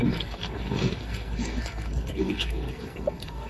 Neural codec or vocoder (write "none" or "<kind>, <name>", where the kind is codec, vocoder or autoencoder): codec, SNAC